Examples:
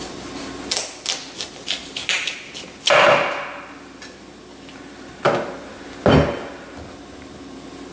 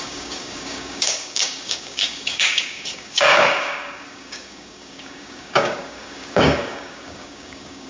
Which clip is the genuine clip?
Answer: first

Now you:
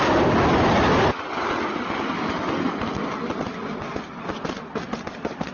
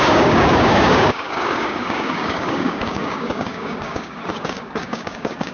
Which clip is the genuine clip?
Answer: first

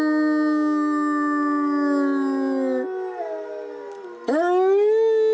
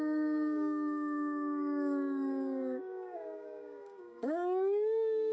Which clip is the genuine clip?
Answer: first